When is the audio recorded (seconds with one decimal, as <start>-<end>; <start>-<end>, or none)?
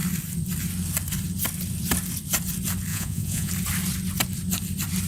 0.0-2.9; 3.5-5.1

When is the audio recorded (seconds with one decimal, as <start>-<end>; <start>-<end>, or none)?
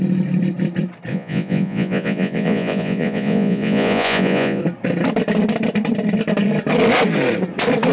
0.0-1.1; 4.6-7.9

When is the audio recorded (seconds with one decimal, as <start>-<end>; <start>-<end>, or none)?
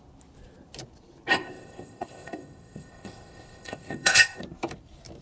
0.0-1.3; 4.4-5.2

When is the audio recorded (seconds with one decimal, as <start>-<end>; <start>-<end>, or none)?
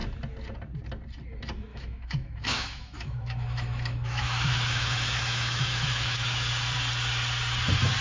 0.0-1.7; 6.5-8.0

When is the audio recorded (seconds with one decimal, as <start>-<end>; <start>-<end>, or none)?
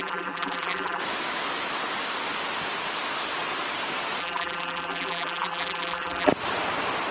1.0-4.2; 6.3-7.1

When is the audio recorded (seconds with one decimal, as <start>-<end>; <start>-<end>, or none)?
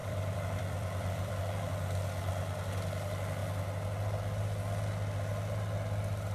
1.4-6.3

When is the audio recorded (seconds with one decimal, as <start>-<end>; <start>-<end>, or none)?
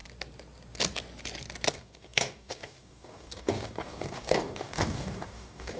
0.0-1.7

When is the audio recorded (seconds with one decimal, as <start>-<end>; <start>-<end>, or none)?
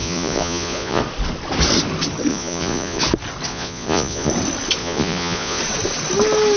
1.0-2.3; 3.0-3.5; 4.3-4.8; 5.6-6.6